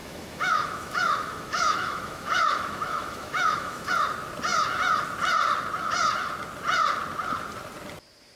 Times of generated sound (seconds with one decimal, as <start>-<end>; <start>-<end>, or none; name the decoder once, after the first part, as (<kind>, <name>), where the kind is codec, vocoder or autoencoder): 0.0-3.9 (autoencoder, DAC-VAE)